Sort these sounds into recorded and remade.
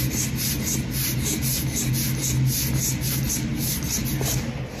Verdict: recorded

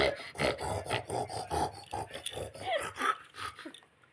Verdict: recorded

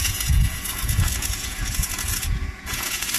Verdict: remade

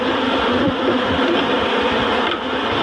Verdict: remade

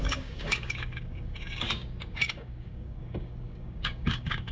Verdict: remade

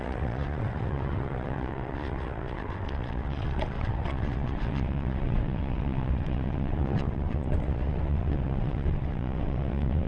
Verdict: remade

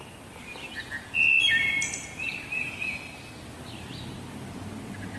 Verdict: recorded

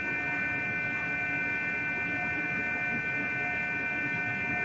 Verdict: recorded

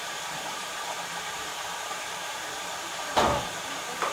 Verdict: remade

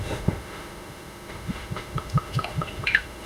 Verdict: remade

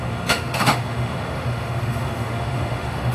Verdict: remade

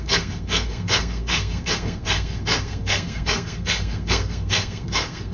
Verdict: remade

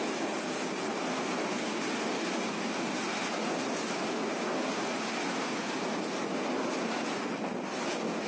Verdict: recorded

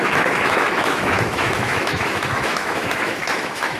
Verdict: remade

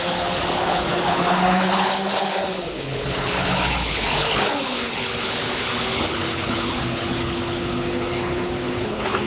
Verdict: remade